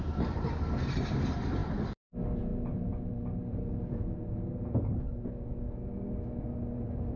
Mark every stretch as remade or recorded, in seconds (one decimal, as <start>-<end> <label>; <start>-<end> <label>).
0.0-2.5 recorded; 2.5-5.3 remade; 5.3-7.2 recorded